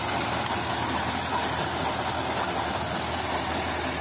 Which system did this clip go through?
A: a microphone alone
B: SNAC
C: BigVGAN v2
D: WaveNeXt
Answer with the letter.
A